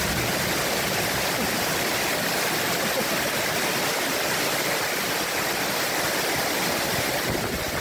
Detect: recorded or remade recorded